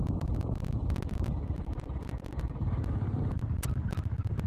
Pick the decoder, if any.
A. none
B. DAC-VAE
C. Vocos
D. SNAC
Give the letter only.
A